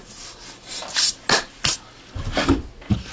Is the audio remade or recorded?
recorded